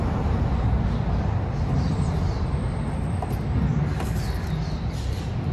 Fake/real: real